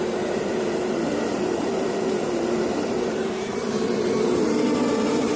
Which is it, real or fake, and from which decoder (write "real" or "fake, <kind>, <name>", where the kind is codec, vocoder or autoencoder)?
fake, vocoder, BigVGAN v2